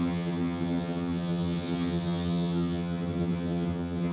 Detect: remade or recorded remade